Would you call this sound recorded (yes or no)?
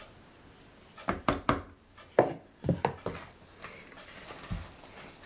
yes